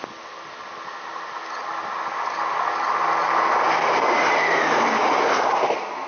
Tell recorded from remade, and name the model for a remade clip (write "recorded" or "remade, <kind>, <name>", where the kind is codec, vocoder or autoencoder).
recorded